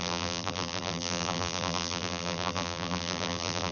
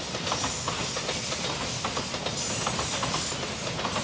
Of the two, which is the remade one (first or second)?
first